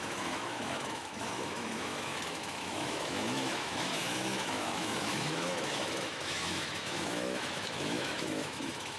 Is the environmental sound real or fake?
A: fake